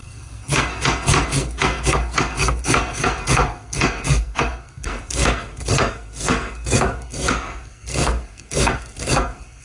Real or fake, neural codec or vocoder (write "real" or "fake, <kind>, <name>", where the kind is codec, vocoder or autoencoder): fake, codec, SNAC